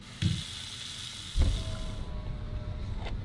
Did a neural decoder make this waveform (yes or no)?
no